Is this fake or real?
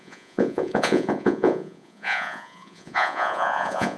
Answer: fake